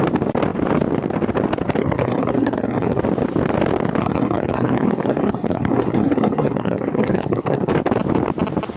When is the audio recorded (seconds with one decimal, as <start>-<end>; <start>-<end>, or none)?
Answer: 0.0-1.8; 3.0-4.0; 7.7-8.8